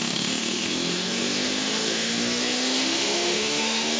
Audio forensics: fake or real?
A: fake